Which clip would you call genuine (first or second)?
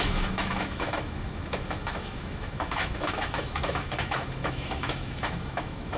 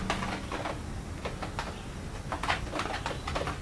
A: second